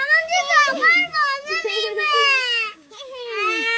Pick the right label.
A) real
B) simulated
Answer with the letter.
B